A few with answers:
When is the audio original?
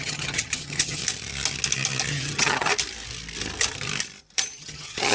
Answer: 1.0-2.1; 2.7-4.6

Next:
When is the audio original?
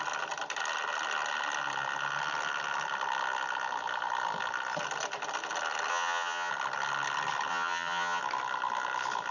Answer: 0.0-5.9; 6.5-7.5; 8.2-9.3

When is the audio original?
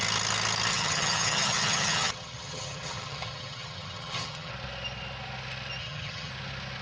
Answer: 0.0-0.7; 4.5-5.8; 6.3-6.8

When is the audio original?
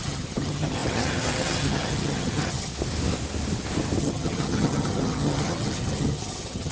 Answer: 2.7-4.0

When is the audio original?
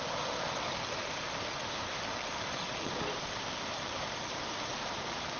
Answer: 0.0-5.4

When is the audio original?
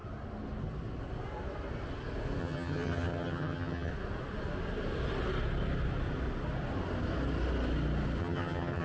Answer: 0.0-2.4; 3.9-8.2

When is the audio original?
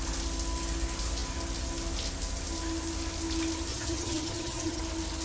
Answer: 0.0-3.7; 4.8-5.2